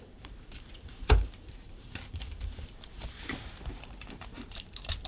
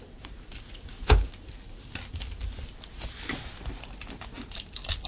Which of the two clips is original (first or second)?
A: second